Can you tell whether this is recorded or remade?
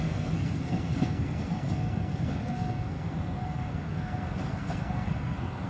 remade